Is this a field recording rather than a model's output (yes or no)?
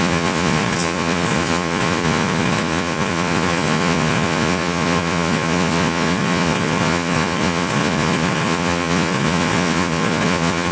no